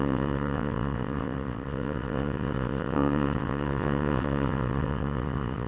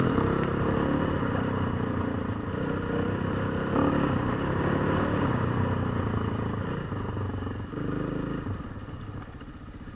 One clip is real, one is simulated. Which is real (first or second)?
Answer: second